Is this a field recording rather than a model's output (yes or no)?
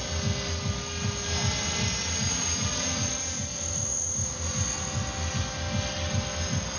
yes